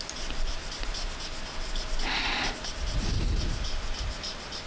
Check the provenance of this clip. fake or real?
real